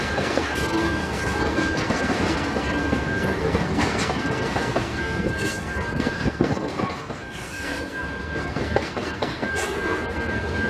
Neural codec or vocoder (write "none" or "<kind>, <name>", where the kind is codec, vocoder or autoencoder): codec, SNAC